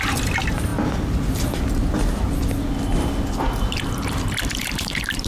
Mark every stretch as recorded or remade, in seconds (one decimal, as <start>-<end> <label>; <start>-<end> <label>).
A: 0.0-4.6 recorded; 4.6-5.3 remade